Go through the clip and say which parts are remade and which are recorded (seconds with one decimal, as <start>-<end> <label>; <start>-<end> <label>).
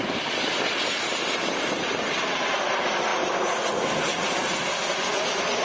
0.0-1.4 recorded; 1.4-2.0 remade; 2.0-4.1 recorded; 4.1-5.0 remade; 5.0-5.6 recorded